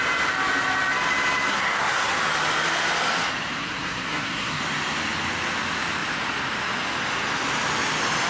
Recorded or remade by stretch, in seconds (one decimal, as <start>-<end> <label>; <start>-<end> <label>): 0.0-1.5 recorded; 1.5-2.2 remade; 2.2-3.6 recorded; 3.6-4.6 remade; 4.6-8.3 recorded